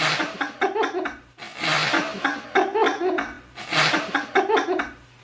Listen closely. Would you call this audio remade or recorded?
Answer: recorded